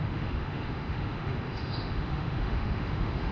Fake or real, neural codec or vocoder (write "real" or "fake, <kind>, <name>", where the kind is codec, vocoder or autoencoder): fake, autoencoder, DAC-VAE